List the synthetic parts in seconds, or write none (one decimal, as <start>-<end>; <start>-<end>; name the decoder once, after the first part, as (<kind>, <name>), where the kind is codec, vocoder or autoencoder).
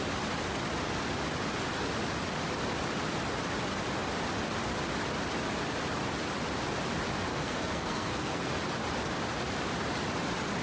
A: 7.3-8.5 (codec, SNAC)